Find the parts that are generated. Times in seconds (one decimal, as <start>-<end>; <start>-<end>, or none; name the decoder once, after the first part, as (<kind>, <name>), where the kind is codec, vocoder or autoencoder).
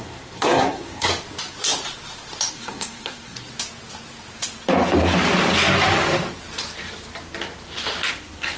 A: 0.0-1.1 (codec, SNAC); 2.5-3.5; 8.1-8.6